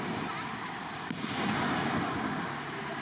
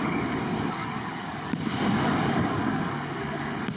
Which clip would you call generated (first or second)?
second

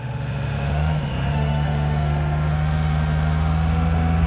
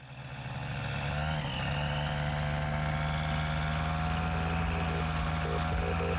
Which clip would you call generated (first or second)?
first